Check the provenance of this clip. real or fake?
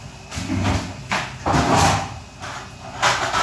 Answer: real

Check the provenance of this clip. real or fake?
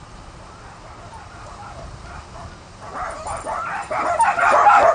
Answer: fake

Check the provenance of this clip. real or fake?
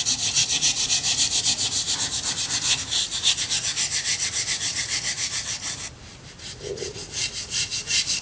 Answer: fake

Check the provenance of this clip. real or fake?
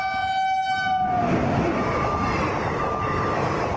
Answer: real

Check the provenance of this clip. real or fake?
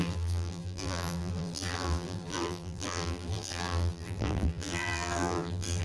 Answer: fake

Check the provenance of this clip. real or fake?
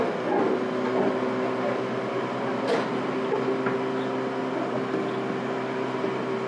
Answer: real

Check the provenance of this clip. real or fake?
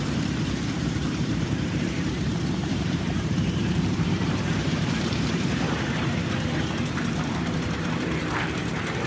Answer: fake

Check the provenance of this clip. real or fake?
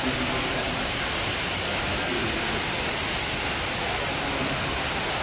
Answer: real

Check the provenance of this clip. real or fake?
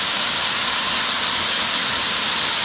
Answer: fake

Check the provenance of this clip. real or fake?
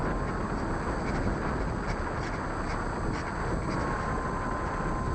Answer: real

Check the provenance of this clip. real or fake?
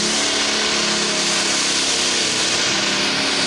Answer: real